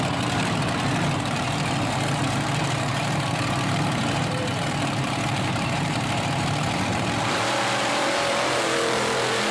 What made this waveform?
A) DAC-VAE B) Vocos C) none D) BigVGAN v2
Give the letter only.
D